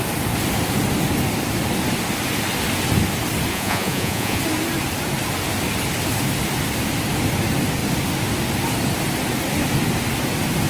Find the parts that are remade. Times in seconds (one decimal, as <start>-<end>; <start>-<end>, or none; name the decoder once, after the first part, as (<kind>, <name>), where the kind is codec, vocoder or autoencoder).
3.5-4.4 (vocoder, Vocos)